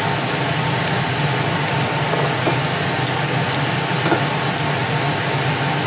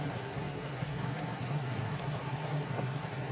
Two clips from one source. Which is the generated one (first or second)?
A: second